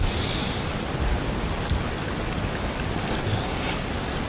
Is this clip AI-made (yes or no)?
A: no